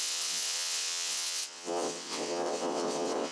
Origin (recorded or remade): remade